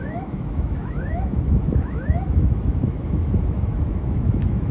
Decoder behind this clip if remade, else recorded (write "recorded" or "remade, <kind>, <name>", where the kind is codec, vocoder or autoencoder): remade, autoencoder, DAC-VAE